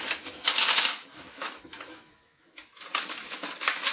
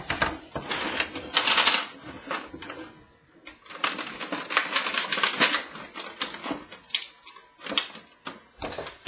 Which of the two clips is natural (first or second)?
second